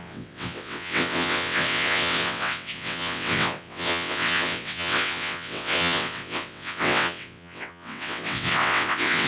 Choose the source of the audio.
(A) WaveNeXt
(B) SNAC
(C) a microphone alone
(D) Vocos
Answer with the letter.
A